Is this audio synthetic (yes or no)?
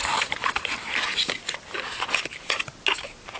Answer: no